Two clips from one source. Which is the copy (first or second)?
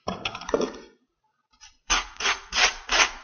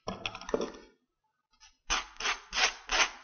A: first